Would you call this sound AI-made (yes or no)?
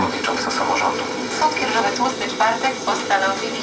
no